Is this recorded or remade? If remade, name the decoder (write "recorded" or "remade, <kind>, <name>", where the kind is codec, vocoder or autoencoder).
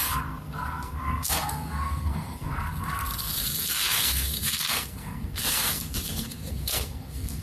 remade, codec, SNAC